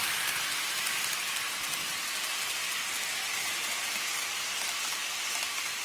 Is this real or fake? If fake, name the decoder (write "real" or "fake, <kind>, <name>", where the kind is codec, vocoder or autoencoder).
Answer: real